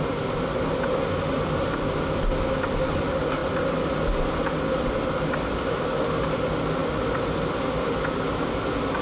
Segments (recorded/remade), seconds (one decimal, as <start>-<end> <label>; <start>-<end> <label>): 0.0-9.0 recorded